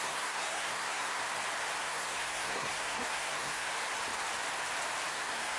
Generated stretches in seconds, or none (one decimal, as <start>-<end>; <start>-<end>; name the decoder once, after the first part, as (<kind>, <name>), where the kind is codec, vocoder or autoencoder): 0.0-1.2 (codec, SNAC); 1.8-3.7; 5.1-5.6